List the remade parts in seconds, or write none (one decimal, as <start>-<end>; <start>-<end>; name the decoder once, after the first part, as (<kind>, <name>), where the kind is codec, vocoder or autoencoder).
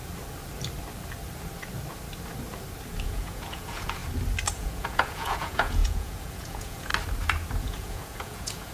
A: 3.0-4.0 (vocoder, Vocos); 4.5-6.9; 7.6-8.7